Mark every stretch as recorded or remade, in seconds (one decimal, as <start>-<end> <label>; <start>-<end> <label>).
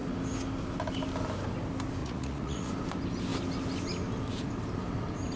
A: 0.0-2.0 recorded; 2.0-2.7 remade; 2.7-5.4 recorded